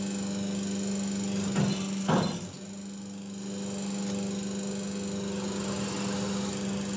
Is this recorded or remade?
recorded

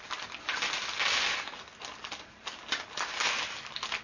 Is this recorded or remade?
recorded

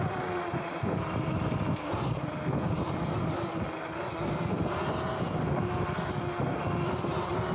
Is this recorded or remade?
recorded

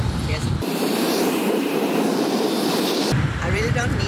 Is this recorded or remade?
remade